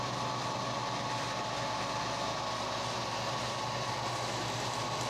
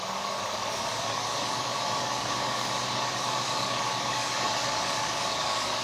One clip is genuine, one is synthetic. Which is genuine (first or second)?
first